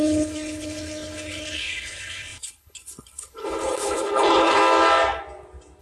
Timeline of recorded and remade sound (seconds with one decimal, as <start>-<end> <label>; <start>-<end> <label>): 0.0-4.6 remade; 4.6-5.8 recorded